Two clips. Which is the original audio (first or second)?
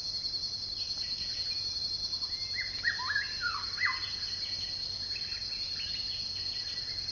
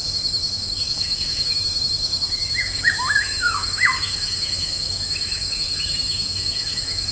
first